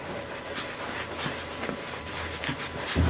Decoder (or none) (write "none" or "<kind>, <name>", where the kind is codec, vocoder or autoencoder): none